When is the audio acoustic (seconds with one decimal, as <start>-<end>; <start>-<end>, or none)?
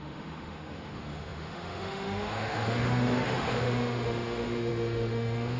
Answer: none